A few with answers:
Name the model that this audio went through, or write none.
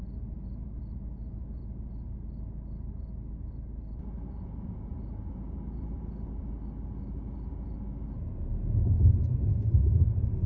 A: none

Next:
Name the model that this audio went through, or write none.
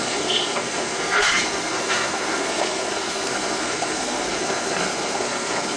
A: codec, SNAC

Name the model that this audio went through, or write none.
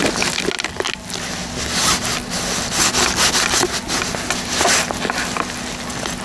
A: none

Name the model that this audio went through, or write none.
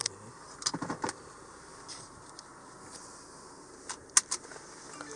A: none